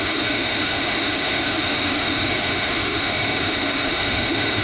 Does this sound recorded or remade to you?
remade